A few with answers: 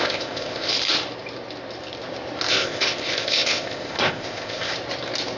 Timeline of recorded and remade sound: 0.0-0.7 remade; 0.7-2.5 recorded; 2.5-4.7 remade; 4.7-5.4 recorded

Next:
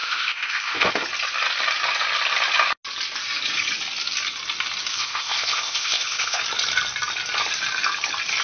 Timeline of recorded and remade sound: 0.0-0.9 remade; 0.9-4.9 recorded; 4.9-6.4 remade; 6.4-8.4 recorded

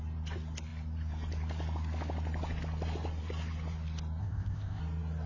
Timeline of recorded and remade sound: 0.0-4.2 recorded; 4.2-4.8 remade; 4.8-5.3 recorded

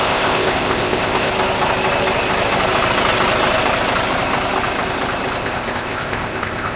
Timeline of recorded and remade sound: 0.0-1.3 remade; 1.3-5.4 recorded; 5.4-6.8 remade

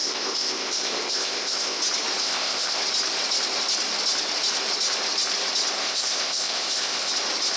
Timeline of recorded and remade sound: 0.0-1.8 remade; 1.8-2.2 recorded; 2.2-2.8 remade; 2.8-5.8 recorded; 5.8-7.1 remade; 7.1-7.6 recorded

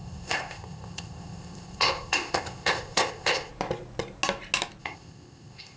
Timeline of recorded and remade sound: 0.0-3.5 remade; 3.5-4.8 recorded; 4.8-5.8 remade